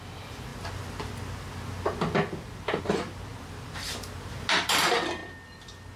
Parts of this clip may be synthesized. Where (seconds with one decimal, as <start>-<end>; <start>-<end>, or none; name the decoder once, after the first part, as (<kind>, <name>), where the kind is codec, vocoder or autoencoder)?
0.0-0.5 (vocoder, BigVGAN v2); 2.8-3.3; 4.3-5.2